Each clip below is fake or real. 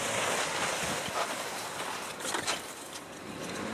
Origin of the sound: real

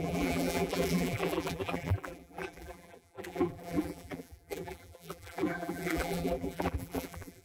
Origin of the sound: fake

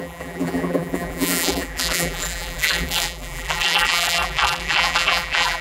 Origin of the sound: fake